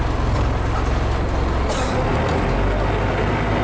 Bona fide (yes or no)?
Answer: yes